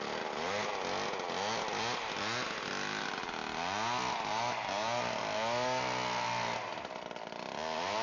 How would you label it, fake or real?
real